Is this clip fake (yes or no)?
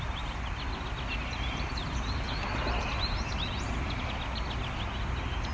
no